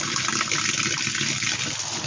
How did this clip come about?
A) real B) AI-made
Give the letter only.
A